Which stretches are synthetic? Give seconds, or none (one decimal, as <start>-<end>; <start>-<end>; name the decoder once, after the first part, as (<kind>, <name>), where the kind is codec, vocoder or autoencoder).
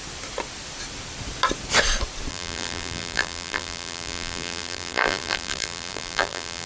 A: 2.3-6.7 (vocoder, BigVGAN v2)